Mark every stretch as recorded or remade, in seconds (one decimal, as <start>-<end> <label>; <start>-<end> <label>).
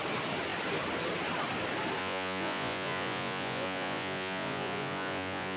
0.0-2.0 recorded; 2.0-5.6 remade